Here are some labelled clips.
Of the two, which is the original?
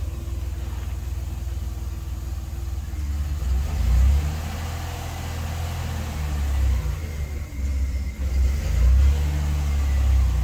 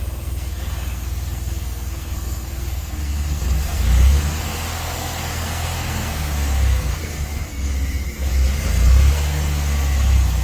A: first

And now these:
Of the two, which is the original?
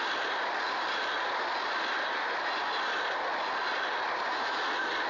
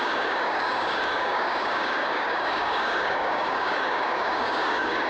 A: first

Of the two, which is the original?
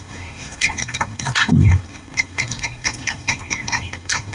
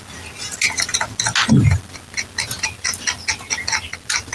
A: second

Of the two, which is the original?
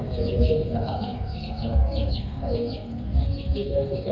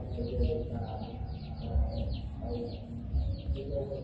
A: second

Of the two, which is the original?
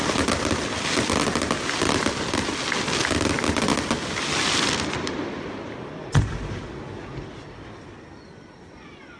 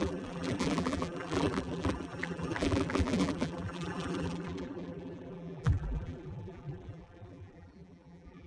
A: first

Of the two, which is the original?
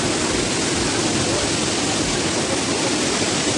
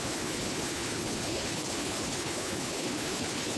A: first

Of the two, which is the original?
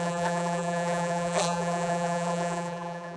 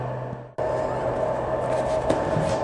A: second